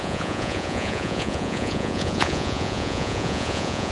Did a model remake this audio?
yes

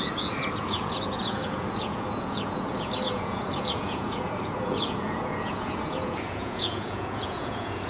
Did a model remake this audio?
yes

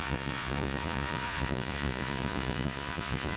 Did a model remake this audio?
yes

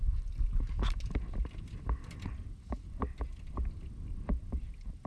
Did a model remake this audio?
no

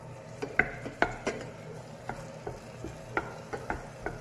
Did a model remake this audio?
no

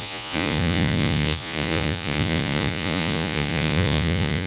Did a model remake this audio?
yes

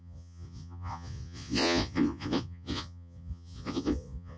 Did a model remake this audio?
yes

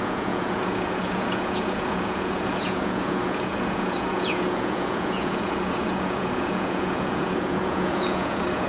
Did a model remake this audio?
yes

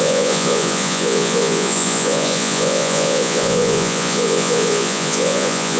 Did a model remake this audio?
yes